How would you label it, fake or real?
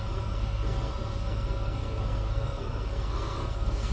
fake